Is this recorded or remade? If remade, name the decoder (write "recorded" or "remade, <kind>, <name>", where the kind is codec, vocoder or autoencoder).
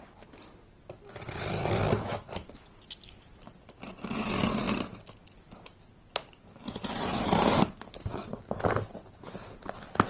recorded